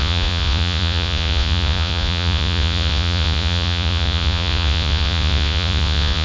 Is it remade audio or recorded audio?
remade